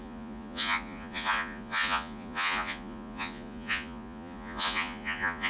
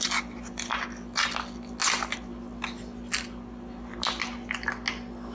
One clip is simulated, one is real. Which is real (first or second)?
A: second